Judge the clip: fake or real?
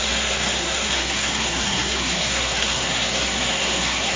fake